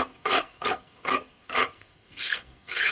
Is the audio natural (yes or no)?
no